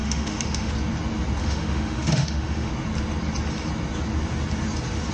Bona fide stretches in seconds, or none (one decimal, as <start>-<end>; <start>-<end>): 0.7-1.4; 2.7-5.1